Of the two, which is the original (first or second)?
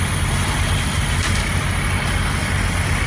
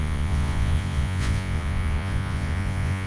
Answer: first